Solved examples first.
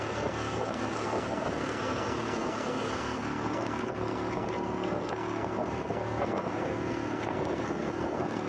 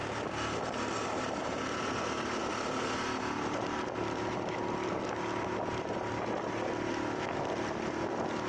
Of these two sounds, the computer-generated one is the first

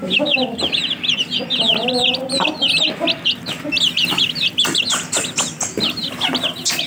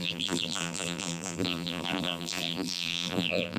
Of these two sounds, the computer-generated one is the second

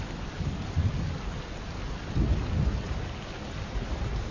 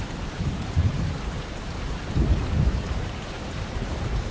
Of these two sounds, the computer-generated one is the second